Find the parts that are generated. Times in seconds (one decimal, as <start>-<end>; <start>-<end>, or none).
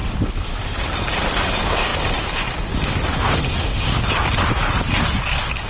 none